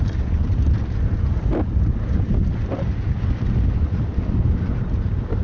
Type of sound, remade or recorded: recorded